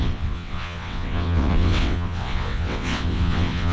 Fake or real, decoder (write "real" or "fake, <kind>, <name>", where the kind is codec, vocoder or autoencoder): fake, vocoder, WaveNeXt